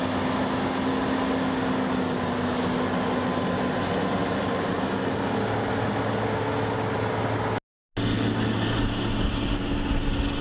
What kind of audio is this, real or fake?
real